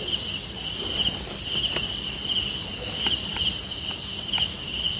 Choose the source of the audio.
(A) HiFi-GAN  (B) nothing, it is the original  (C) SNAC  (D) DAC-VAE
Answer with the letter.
B